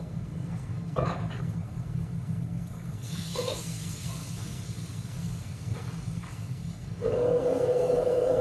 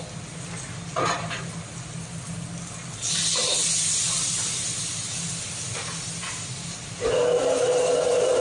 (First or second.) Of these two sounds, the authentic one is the second